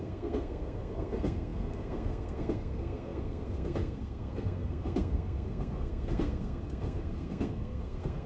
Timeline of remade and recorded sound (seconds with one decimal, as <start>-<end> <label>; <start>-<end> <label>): 0.0-8.3 remade